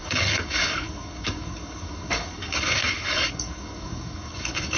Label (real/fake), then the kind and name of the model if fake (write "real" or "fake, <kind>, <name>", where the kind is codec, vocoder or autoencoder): fake, codec, DAC